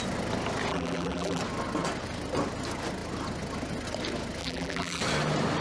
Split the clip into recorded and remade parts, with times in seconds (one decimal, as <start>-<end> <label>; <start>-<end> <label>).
0.0-0.7 recorded; 0.7-1.4 remade; 1.4-4.4 recorded; 4.4-5.0 remade; 5.0-5.6 recorded